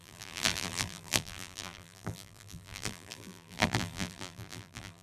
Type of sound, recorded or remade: remade